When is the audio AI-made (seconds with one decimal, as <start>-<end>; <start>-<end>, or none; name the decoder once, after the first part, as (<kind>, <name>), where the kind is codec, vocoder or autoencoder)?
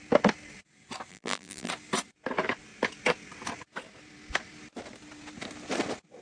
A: 1.1-1.7 (vocoder, BigVGAN v2)